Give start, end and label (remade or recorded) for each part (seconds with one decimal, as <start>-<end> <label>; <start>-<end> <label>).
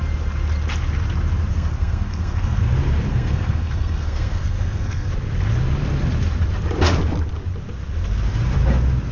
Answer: 0.0-1.5 recorded; 1.5-2.6 remade; 2.6-3.1 recorded; 3.1-5.1 remade; 5.1-9.1 recorded